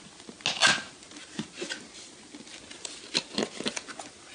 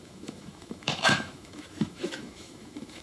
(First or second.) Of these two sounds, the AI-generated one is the second